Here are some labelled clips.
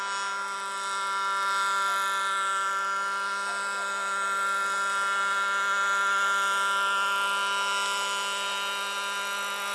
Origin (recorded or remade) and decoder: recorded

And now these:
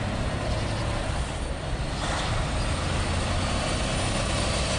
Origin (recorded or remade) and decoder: recorded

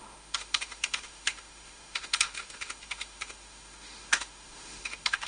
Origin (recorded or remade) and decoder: remade, autoencoder, DAC-VAE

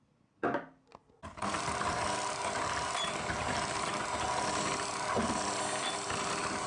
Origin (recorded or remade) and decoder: recorded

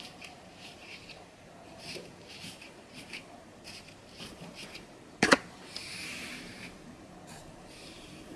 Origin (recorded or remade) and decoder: remade, vocoder, BigVGAN v2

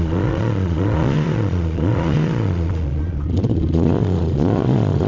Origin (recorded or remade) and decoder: remade, vocoder, Vocos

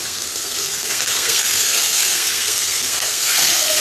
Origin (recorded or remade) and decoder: remade, codec, SNAC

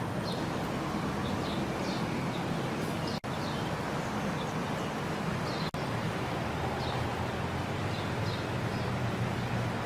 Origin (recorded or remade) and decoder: recorded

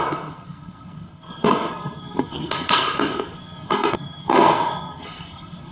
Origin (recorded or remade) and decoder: remade, codec, SNAC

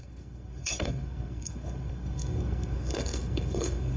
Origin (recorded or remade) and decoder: remade, codec, SNAC